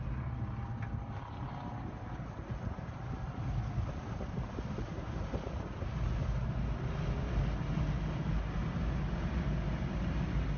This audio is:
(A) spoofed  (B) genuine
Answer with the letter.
B